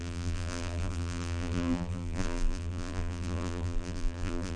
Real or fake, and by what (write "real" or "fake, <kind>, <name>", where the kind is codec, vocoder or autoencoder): fake, vocoder, BigVGAN v2